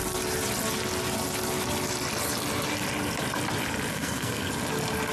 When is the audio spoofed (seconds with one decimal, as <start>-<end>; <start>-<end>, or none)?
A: 3.9-4.5